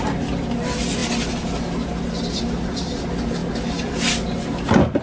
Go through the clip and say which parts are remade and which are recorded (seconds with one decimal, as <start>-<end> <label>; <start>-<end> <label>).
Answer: 0.0-5.0 recorded